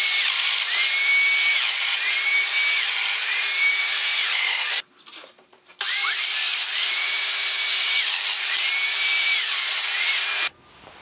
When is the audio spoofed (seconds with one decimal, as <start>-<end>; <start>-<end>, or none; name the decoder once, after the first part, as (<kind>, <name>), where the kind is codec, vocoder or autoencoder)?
0.0-1.1 (vocoder, BigVGAN v2); 1.7-11.0